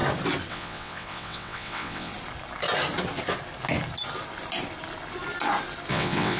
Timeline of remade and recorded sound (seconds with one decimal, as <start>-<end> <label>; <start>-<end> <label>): 0.0-0.5 recorded; 0.5-2.1 remade; 2.1-5.9 recorded; 5.9-6.4 remade